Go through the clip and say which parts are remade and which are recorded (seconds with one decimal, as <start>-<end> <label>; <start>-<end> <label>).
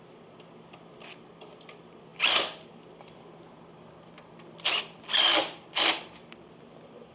0.0-7.1 recorded